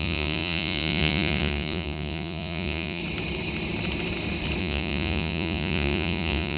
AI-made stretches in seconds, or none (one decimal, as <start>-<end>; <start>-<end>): 0.0-3.0; 4.6-6.6